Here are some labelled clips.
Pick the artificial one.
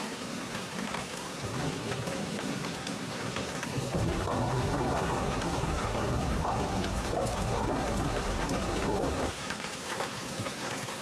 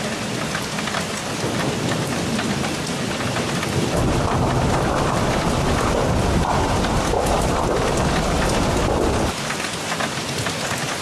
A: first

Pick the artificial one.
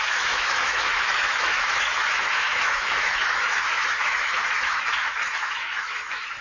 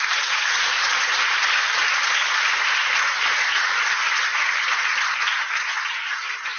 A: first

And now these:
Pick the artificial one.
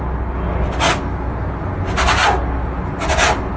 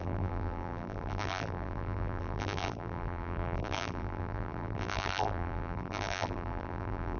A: second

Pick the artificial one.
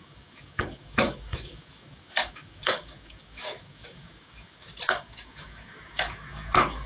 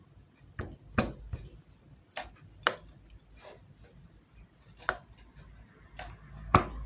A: first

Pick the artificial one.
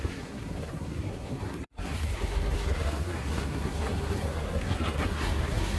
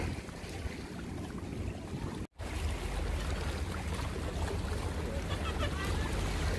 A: first